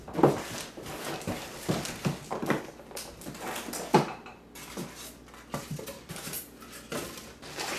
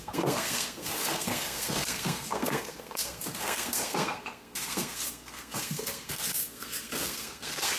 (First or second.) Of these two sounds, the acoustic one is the first